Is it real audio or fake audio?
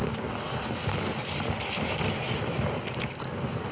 real